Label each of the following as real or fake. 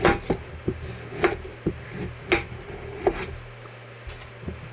real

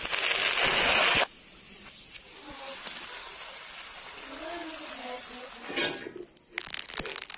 real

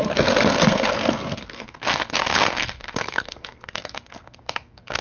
fake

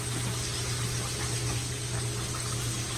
real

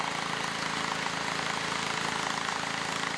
real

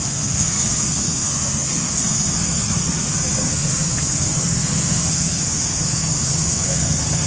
fake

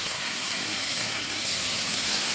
fake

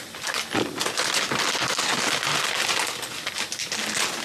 real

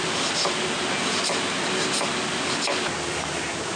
real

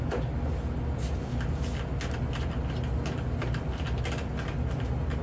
real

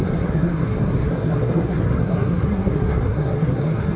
fake